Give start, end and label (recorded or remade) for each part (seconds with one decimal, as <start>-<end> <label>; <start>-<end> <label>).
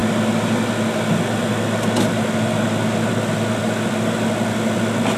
0.0-5.2 recorded